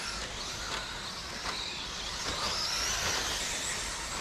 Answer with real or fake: real